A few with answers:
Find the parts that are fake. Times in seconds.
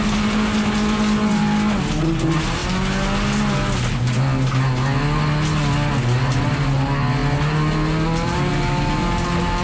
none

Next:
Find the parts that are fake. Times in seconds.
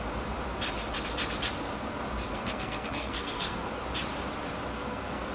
2.3-3.7; 4.7-5.3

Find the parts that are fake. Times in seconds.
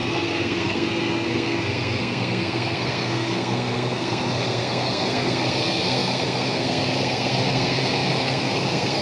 0.0-9.0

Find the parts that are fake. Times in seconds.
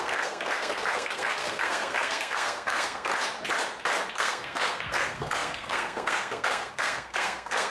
0.0-3.1; 4.1-7.7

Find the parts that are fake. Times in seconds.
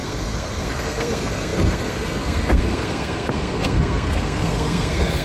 0.0-5.2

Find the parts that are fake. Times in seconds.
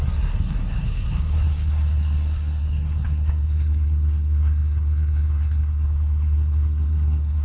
0.0-7.4